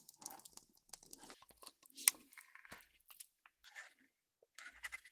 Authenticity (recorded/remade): recorded